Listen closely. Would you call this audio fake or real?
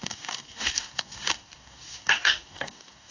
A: fake